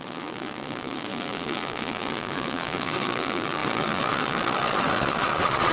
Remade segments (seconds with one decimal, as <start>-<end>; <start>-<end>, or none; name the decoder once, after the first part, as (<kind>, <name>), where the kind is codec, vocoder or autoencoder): 0.0-5.7 (vocoder, Vocos)